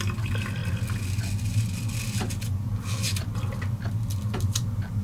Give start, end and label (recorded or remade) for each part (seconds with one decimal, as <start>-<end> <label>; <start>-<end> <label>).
0.0-5.0 recorded